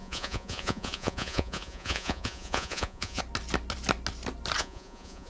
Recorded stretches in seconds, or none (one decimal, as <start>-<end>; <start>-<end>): 3.2-4.6